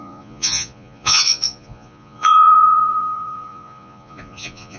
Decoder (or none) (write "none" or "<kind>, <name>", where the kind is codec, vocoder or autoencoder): vocoder, Vocos